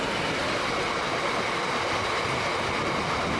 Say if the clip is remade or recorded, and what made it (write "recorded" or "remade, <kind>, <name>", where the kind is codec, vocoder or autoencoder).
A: recorded